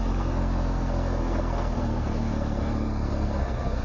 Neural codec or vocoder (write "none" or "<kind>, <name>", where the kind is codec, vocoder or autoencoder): codec, SNAC